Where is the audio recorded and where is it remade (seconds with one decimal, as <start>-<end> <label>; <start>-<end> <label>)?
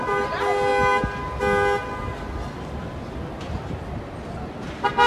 0.0-5.1 recorded